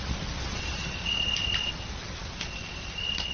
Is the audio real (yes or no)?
yes